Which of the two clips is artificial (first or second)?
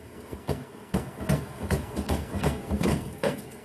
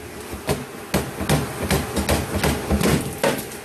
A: first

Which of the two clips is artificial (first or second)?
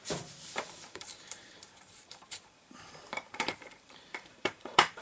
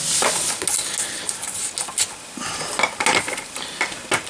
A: first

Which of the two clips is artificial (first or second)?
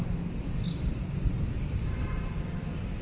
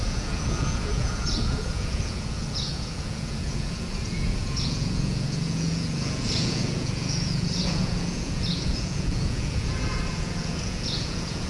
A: second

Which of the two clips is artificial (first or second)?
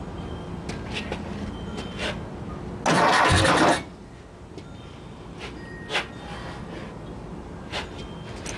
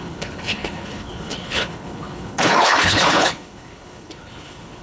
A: second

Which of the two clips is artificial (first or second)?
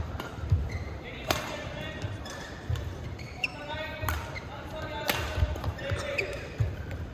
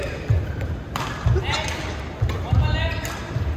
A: first